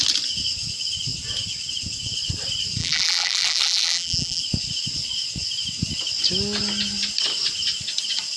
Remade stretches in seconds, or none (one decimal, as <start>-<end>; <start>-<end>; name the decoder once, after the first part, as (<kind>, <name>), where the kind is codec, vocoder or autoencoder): 2.8-4.4 (vocoder, BigVGAN v2)